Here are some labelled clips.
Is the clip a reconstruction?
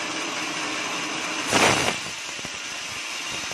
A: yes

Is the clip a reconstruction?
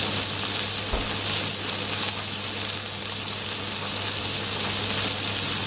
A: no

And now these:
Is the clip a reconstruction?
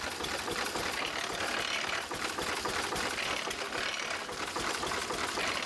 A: no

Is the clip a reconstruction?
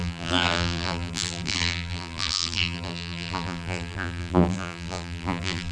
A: yes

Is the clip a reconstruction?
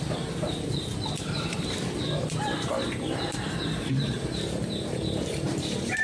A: yes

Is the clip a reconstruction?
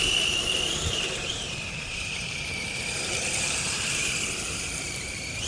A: yes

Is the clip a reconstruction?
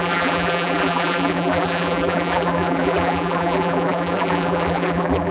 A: yes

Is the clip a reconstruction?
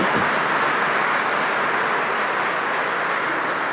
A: no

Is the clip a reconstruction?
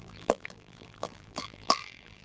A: yes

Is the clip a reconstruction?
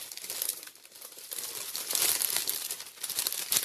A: no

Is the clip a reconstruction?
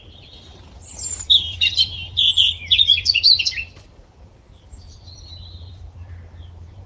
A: yes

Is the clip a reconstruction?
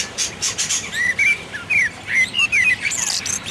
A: yes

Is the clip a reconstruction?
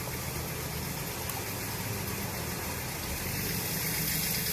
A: no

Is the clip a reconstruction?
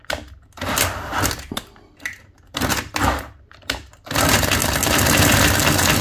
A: no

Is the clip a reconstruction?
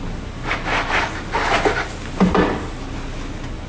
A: no